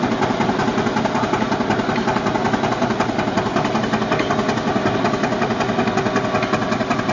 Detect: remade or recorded recorded